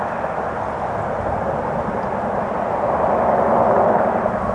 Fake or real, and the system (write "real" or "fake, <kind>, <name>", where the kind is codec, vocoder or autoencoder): real